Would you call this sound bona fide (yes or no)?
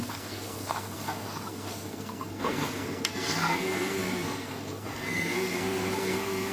no